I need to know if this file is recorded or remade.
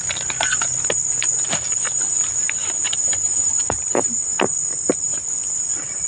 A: recorded